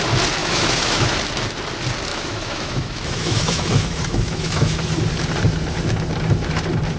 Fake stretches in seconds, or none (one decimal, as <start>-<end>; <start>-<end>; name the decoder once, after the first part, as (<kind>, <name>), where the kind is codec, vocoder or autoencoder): 0.4-1.2 (autoencoder, DAC-VAE); 2.1-4.8